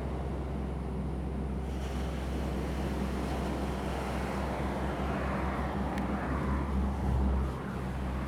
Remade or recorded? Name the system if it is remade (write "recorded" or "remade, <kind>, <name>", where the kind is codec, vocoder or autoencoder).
recorded